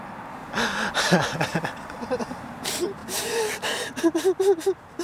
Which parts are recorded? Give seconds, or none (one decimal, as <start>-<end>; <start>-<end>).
0.4-1.0; 1.5-2.2